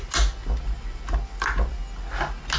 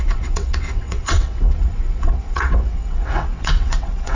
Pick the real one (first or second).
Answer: first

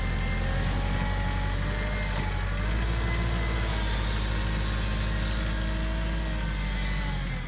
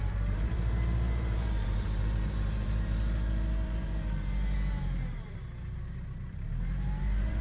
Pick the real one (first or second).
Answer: first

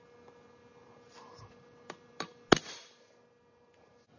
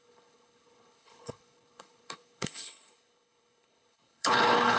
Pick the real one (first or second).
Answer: first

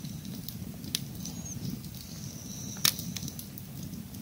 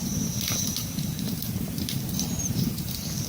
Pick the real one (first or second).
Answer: first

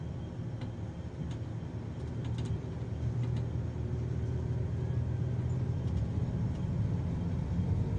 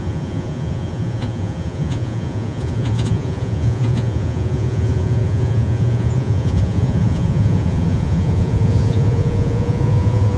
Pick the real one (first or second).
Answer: first